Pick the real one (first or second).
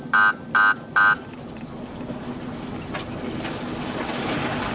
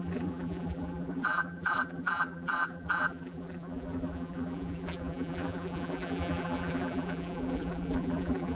first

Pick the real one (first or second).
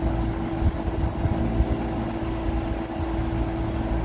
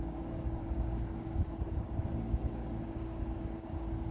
first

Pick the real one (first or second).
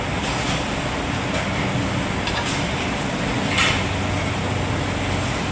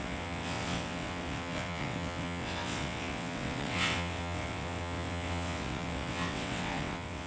first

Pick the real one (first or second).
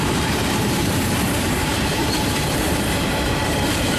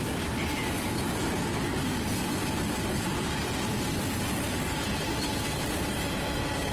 second